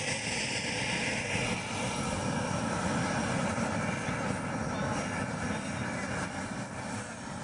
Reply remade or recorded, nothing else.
recorded